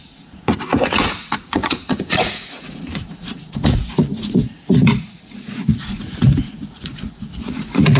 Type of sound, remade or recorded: remade